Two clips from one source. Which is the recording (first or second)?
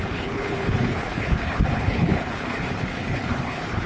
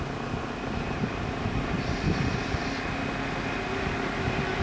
second